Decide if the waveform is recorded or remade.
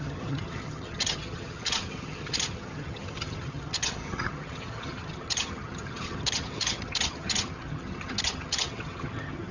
remade